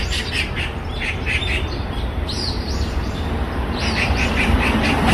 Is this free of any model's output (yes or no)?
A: no